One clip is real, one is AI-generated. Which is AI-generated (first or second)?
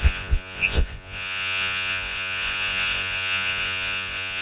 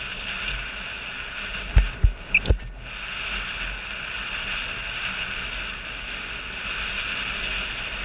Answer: first